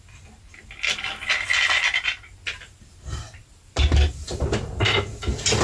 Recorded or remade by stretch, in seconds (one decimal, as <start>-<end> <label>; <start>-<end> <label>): 0.0-5.6 recorded